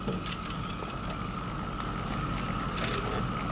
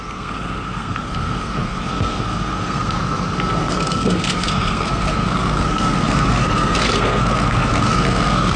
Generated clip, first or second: second